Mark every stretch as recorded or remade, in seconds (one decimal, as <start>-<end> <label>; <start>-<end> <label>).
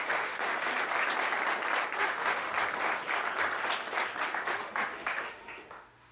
0.0-0.7 remade; 0.7-2.0 recorded; 2.0-2.5 remade; 2.5-4.2 recorded; 4.2-6.1 remade